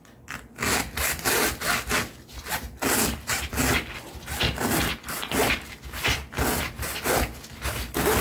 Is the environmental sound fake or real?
real